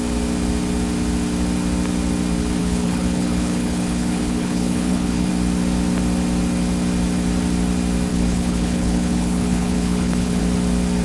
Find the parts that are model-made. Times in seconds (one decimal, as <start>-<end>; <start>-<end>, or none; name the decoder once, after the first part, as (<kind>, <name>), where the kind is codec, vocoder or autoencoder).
2.6-5.3 (codec, HILCodec); 8.1-10.4